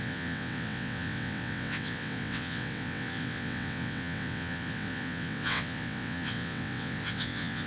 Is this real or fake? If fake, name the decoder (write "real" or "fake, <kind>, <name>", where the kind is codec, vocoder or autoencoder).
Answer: fake, vocoder, WaveNeXt